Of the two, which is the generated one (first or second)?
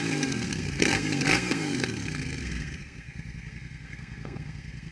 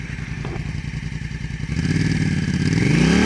first